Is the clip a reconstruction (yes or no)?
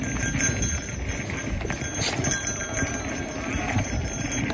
no